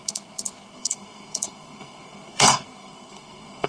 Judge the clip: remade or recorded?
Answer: remade